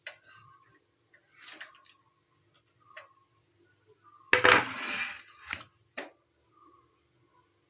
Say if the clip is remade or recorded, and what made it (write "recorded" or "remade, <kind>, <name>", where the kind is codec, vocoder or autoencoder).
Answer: recorded